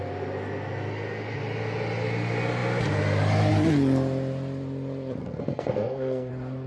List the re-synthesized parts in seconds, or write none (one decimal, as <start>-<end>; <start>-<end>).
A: 5.2-6.3